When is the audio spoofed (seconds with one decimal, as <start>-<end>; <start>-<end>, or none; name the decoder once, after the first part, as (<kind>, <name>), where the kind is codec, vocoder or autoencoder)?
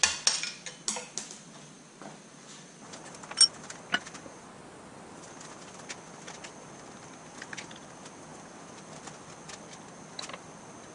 none